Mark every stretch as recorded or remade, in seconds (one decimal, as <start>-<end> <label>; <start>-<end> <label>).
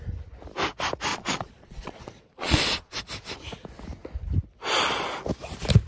0.0-1.1 recorded; 1.1-3.0 remade; 3.0-5.9 recorded